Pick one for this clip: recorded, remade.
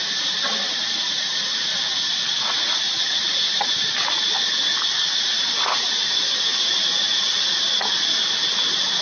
recorded